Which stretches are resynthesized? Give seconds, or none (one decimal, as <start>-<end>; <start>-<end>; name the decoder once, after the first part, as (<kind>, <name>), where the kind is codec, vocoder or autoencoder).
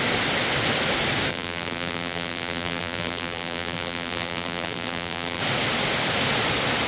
1.3-5.4 (vocoder, BigVGAN v2)